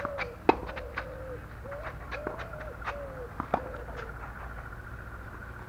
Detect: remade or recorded recorded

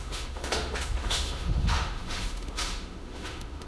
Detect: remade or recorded remade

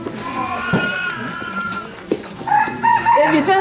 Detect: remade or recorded remade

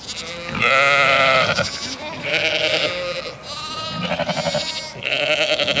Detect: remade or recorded recorded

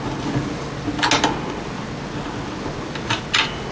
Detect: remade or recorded recorded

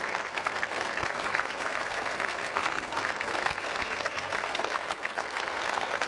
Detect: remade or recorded remade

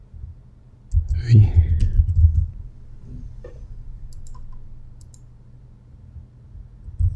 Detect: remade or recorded recorded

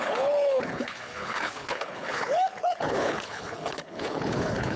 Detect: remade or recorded remade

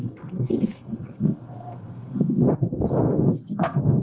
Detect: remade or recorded remade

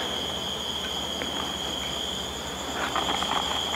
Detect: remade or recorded recorded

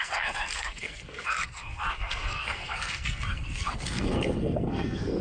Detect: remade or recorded remade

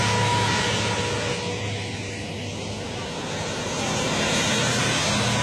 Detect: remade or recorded recorded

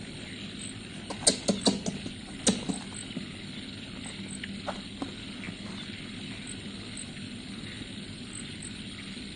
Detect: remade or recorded recorded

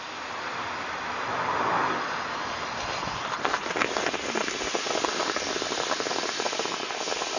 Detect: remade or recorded recorded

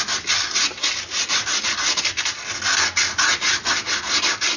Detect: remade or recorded recorded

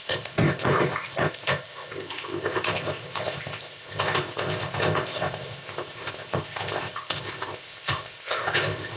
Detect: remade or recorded remade